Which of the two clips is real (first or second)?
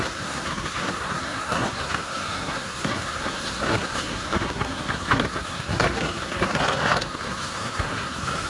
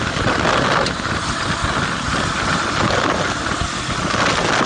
second